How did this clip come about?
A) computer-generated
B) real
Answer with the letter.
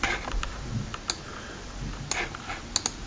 B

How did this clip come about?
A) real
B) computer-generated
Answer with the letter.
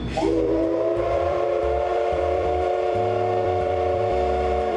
B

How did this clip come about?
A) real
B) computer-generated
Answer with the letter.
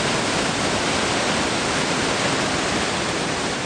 B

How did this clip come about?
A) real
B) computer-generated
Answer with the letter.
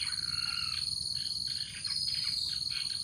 A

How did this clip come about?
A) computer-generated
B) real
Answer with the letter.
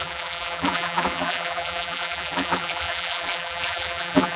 A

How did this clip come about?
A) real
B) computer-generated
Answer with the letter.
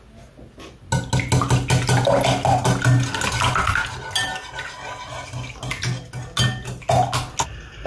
A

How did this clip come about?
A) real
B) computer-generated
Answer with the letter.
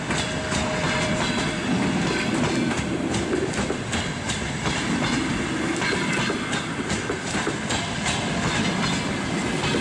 B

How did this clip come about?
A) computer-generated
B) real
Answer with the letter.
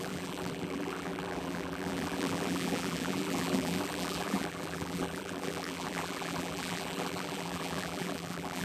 A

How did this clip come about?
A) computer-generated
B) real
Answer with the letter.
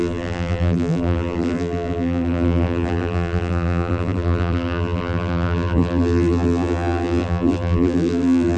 A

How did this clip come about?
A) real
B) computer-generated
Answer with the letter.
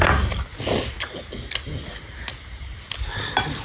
A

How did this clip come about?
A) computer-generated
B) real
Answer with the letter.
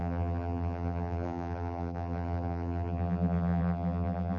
A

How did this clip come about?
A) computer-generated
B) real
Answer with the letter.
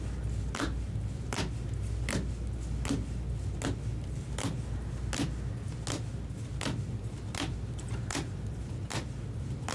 B